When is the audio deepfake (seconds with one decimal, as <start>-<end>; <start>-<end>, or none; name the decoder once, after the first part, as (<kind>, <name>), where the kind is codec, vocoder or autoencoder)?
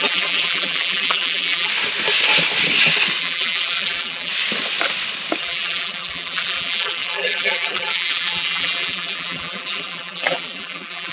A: 0.0-1.7 (vocoder, BigVGAN v2); 3.2-4.3; 5.4-11.1